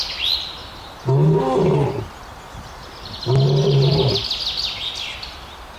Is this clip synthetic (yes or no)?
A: no